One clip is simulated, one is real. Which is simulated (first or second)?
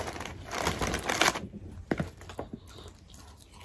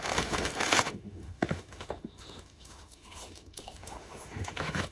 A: second